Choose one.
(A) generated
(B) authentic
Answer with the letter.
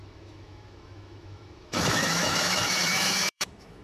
A